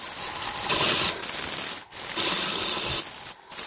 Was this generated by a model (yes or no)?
no